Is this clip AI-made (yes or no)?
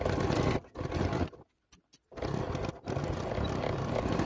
no